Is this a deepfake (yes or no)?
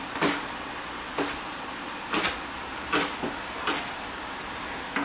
no